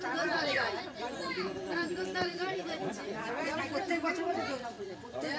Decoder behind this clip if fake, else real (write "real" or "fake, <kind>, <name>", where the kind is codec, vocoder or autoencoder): fake, vocoder, Vocos